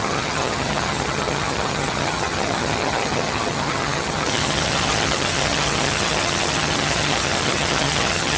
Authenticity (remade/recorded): remade